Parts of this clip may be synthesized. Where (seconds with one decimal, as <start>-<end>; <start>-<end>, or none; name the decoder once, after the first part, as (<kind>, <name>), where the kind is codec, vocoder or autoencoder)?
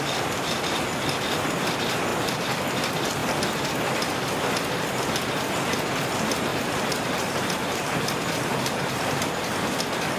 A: 6.5-9.2 (vocoder, BigVGAN v2)